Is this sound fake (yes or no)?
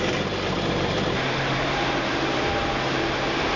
yes